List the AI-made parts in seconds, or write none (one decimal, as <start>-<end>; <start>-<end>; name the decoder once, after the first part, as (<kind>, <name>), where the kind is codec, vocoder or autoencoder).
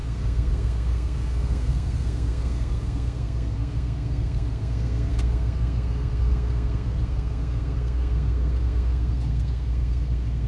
0.0-10.5 (codec, SNAC)